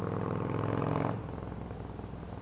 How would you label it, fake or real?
real